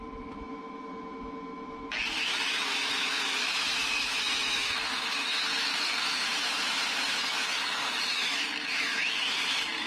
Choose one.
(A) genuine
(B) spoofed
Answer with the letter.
B